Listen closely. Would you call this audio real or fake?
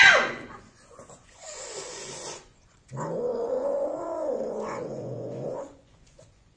fake